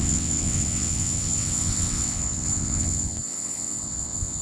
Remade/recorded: remade